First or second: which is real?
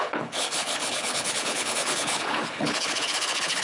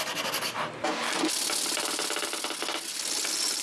second